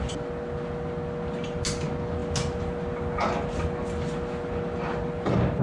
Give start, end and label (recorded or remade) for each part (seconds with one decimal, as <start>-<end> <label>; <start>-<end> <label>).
0.0-5.6 recorded